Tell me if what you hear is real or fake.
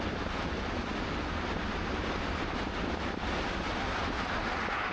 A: real